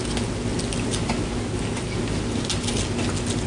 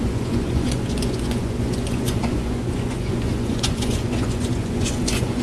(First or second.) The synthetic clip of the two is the second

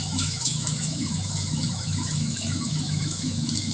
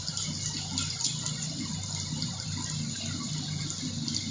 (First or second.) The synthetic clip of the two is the first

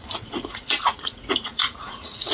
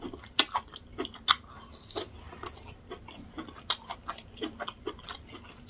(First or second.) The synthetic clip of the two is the first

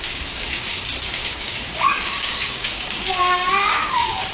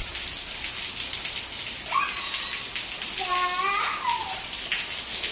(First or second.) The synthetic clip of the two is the first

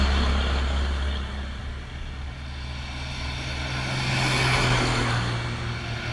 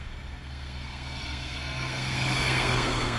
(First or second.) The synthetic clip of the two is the second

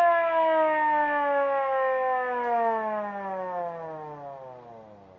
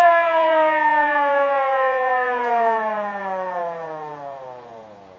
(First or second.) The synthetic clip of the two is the second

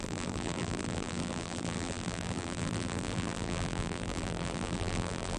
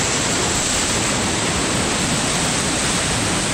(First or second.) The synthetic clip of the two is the first